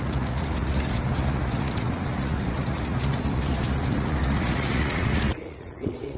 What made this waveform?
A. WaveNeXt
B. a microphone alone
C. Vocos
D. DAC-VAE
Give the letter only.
C